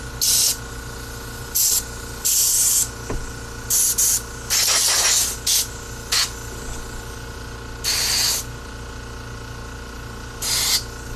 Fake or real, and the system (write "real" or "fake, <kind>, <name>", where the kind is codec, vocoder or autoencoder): real